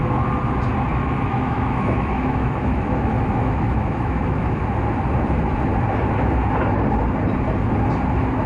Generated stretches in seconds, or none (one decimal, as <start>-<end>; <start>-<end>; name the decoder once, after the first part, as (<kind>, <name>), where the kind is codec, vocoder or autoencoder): 0.9-4.6 (autoencoder, DAC-VAE)